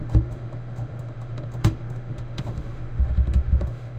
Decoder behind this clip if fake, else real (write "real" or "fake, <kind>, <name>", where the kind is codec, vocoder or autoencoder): fake, autoencoder, DAC-VAE